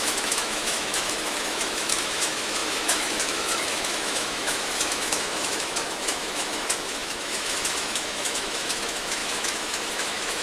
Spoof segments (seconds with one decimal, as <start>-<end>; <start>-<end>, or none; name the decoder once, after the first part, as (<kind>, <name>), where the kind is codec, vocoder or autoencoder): 0.0-10.4 (autoencoder, DAC-VAE)

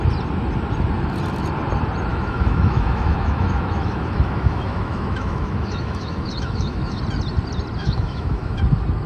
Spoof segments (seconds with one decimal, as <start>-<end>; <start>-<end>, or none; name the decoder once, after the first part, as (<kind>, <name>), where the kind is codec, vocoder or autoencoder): 2.1-7.0 (autoencoder, DAC-VAE); 7.8-8.6

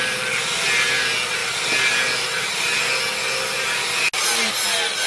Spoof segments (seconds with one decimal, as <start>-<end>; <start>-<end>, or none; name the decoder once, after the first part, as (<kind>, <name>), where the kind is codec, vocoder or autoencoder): none

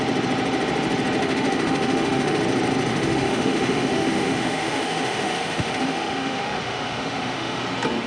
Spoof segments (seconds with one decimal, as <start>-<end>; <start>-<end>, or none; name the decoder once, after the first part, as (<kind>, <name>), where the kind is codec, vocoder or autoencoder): 1.2-2.4 (autoencoder, DAC-VAE); 2.9-7.6